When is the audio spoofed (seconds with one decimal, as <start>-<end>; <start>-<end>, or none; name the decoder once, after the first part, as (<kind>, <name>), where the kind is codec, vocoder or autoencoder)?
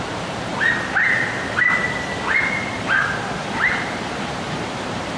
0.0-0.5 (vocoder, BigVGAN v2); 3.6-5.2